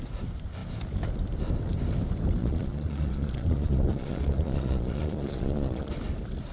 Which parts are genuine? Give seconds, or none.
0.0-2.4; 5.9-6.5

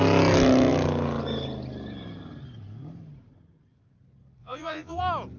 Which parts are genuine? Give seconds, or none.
0.0-4.4; 5.0-5.4

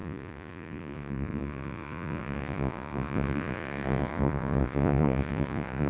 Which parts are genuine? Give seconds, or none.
none

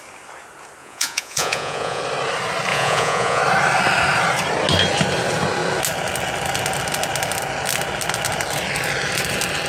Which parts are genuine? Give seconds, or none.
0.0-0.8; 2.0-2.7; 3.4-9.7

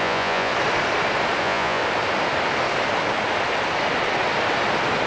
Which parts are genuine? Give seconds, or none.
0.5-1.4; 1.8-5.1

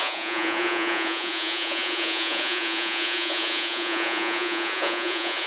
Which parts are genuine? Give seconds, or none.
none

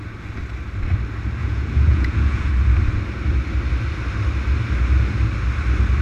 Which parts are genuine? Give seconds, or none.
0.0-1.4; 2.5-6.0